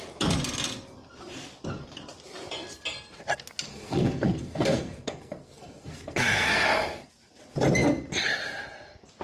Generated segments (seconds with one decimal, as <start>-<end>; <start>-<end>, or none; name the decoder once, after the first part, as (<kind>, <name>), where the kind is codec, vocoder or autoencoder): 3.7-7.1 (codec, SNAC)